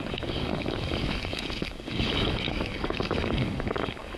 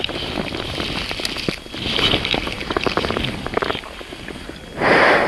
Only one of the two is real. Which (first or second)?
second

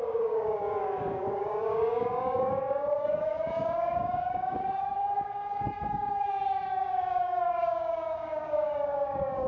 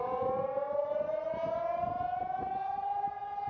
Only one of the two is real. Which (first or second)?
second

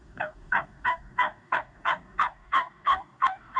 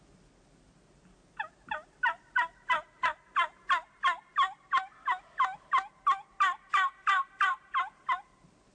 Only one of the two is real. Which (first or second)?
second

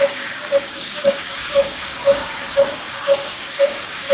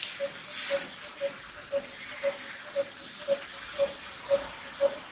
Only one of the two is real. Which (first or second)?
second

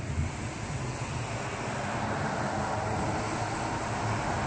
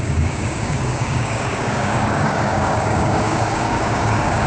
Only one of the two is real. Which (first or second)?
first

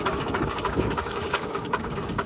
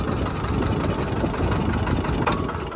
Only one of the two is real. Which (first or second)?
second